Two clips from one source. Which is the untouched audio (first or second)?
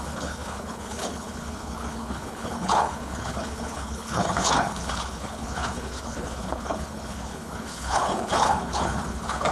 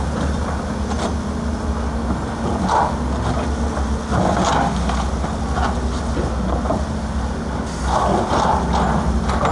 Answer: second